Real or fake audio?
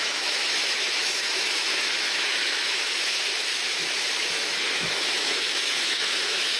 fake